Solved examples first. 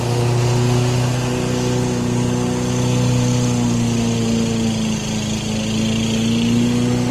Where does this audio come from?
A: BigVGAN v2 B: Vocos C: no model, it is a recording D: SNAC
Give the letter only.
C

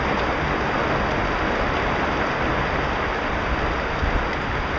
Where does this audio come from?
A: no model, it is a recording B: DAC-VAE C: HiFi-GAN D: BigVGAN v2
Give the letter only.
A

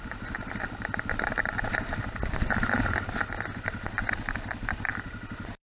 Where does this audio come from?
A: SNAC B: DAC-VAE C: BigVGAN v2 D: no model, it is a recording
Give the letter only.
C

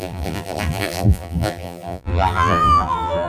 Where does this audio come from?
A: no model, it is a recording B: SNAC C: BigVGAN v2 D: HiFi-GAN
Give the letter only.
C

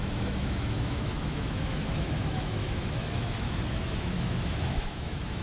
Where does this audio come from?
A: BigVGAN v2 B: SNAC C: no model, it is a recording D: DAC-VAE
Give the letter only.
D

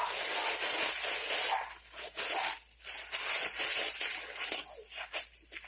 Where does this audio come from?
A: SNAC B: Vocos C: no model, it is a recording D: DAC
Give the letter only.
C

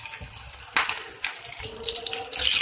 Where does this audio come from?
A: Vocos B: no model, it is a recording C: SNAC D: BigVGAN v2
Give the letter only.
B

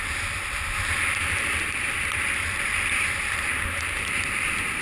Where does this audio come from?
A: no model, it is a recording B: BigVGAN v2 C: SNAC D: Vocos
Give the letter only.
B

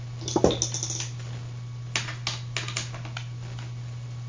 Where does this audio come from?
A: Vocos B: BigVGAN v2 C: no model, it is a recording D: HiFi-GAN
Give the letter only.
C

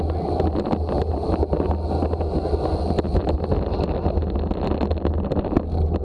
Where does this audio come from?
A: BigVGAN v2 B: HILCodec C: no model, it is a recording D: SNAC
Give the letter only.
C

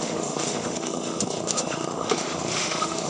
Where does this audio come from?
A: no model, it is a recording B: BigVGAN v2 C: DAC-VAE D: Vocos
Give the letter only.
C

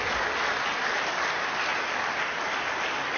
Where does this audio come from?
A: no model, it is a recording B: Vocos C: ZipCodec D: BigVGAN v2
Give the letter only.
A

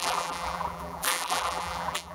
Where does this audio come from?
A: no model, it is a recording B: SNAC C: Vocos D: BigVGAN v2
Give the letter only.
D